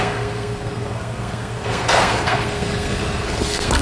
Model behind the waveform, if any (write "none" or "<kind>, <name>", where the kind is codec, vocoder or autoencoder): codec, SNAC